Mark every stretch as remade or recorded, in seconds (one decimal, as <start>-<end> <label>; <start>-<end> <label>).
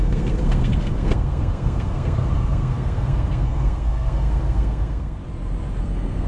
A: 0.0-5.2 remade; 5.2-5.8 recorded; 5.8-6.3 remade